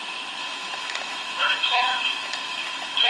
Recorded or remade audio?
remade